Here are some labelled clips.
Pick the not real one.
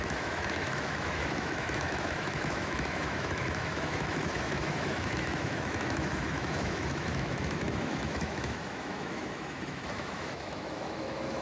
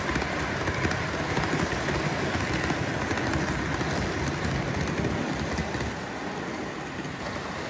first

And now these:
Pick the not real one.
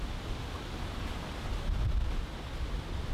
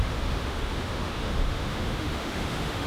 second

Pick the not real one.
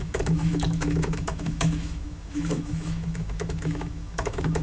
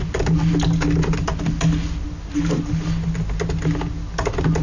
first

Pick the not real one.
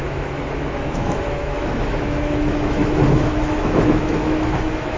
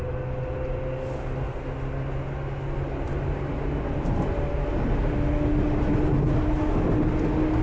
first